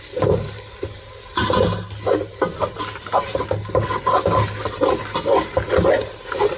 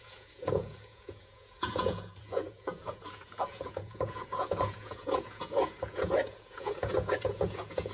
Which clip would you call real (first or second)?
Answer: first